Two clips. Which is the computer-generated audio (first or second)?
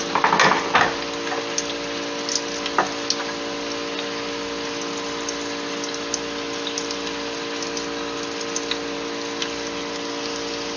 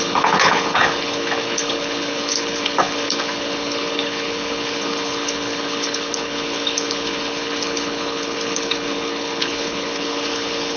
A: second